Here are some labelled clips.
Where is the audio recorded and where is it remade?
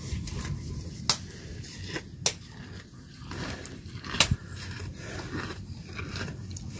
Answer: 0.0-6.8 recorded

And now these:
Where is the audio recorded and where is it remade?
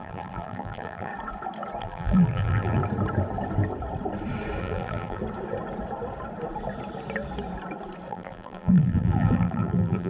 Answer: 0.0-1.1 remade; 1.1-1.8 recorded; 1.8-2.8 remade; 2.8-4.6 recorded; 4.6-5.2 remade; 5.2-8.1 recorded; 8.1-10.1 remade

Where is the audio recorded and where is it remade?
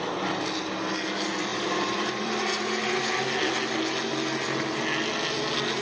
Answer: 0.0-1.5 recorded; 1.5-3.0 remade; 3.0-5.8 recorded